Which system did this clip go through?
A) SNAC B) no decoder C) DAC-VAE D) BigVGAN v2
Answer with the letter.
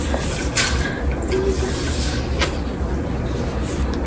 B